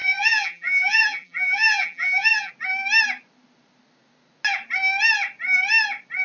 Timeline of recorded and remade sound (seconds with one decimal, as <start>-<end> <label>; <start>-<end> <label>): 0.0-2.5 remade; 2.5-6.2 recorded